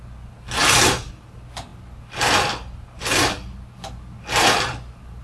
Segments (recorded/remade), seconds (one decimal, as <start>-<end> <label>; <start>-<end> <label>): 0.0-0.6 recorded; 0.6-1.1 remade; 1.1-5.2 recorded